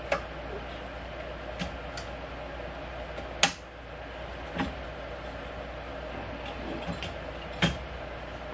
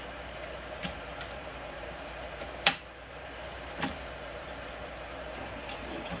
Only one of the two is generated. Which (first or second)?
second